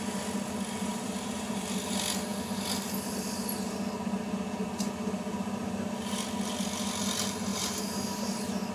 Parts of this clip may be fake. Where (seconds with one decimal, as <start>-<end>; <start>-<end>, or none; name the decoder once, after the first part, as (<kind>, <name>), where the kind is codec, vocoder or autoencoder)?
0.9-1.8 (vocoder, BigVGAN v2); 7.5-8.2

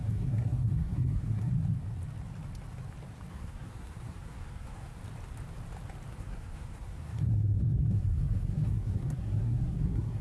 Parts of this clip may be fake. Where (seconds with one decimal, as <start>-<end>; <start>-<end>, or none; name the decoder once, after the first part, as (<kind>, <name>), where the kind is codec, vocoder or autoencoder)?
0.0-1.5 (codec, SNAC); 3.3-5.0; 6.1-10.2

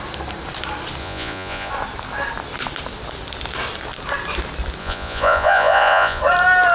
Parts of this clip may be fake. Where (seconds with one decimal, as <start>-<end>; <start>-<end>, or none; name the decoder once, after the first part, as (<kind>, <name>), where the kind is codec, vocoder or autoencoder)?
1.0-1.7 (vocoder, Vocos); 4.8-6.2

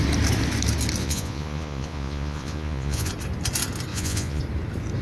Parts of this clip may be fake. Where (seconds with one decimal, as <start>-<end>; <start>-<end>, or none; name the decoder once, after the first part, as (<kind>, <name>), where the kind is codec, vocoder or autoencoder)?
1.0-3.1 (vocoder, Vocos); 3.9-4.4

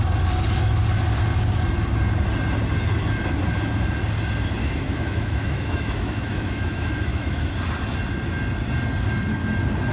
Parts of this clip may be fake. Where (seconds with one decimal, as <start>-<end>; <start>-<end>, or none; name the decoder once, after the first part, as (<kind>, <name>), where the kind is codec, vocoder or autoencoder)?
4.6-7.5 (autoencoder, DAC-VAE)